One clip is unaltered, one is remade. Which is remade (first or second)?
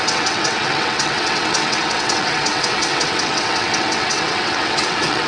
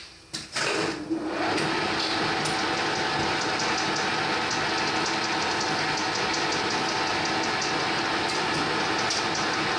first